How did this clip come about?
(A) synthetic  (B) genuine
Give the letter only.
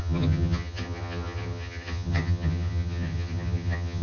A